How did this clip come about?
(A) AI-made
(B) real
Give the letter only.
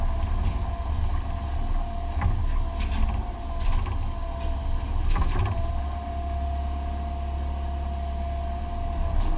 B